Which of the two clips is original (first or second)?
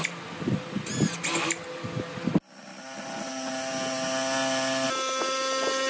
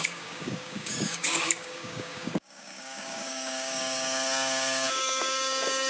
first